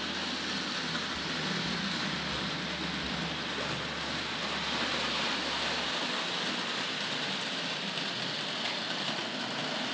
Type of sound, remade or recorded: recorded